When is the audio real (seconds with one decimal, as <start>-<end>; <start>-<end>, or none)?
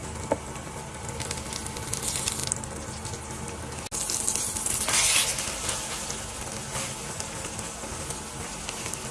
0.0-9.1